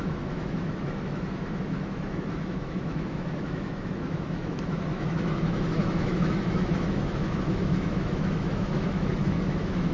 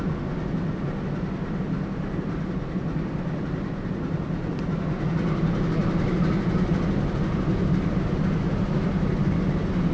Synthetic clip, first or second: first